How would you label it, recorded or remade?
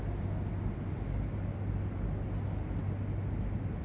recorded